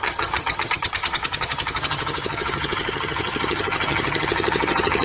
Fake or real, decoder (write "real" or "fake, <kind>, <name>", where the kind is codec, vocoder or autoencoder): fake, vocoder, HiFi-GAN